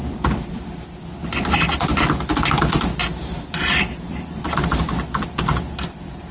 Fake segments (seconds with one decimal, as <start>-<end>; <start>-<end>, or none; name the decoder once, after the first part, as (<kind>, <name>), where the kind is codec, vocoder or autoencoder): 0.0-0.6 (vocoder, BigVGAN v2); 3.0-4.4

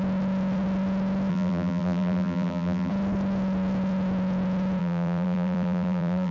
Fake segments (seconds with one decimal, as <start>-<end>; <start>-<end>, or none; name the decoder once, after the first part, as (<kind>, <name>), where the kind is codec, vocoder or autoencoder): 1.3-2.9 (vocoder, BigVGAN v2); 4.8-6.3

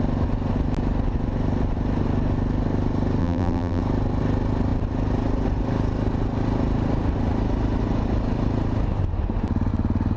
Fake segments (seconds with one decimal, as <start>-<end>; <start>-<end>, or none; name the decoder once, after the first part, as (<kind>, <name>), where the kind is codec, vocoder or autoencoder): 3.2-3.8 (vocoder, BigVGAN v2)

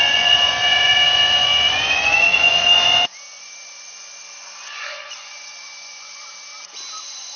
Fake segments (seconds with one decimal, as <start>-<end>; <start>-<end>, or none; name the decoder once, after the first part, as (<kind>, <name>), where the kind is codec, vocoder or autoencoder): 0.0-6.2 (vocoder, Vocos); 7.0-7.4

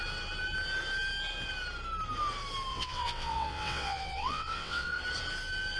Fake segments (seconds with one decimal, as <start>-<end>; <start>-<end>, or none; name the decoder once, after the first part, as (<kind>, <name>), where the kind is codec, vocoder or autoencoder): 2.7-5.0 (vocoder, WaveNeXt)

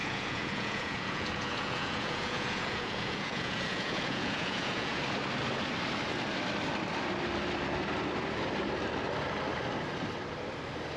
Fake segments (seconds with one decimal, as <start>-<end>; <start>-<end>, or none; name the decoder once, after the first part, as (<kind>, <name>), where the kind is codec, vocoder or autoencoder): 0.0-5.0 (vocoder, Vocos)